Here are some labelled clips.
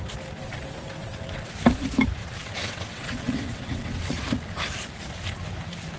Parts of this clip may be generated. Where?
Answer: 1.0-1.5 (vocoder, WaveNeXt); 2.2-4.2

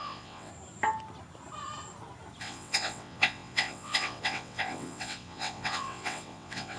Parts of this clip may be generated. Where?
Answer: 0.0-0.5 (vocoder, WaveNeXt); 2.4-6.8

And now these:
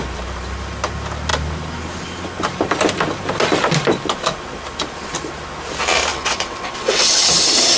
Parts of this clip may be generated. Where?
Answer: 6.1-7.3 (vocoder, WaveNeXt)

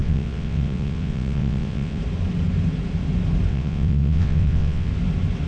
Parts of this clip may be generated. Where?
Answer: 0.0-2.0 (vocoder, WaveNeXt); 3.5-4.9

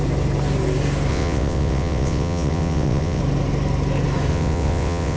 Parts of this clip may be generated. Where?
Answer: 1.1-3.2 (vocoder, WaveNeXt); 4.3-5.2

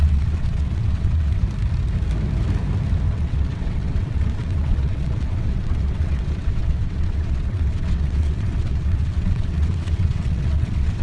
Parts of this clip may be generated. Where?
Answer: 0.0-1.4 (vocoder, WaveNeXt); 3.1-11.0